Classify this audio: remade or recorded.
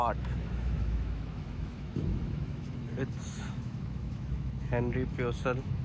remade